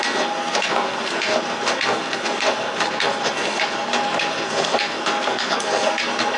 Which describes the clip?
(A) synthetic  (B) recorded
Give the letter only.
A